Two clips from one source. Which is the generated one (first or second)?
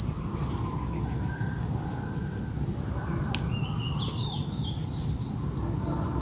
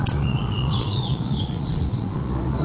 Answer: second